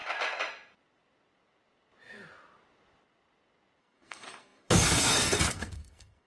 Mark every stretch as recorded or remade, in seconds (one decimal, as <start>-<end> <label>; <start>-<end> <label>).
0.0-3.8 recorded; 3.8-6.3 remade